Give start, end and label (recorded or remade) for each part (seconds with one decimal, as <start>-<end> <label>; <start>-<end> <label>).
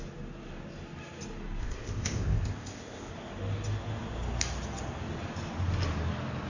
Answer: 0.0-1.6 recorded; 1.6-3.1 remade; 3.1-6.5 recorded